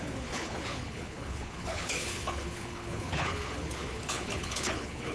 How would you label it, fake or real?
fake